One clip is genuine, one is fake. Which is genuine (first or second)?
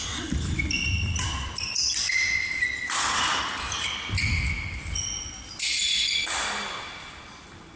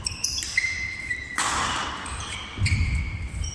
first